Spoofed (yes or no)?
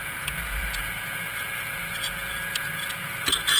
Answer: yes